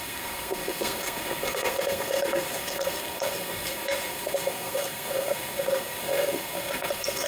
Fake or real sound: fake